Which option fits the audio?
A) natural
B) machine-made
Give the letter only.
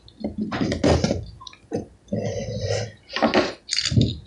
A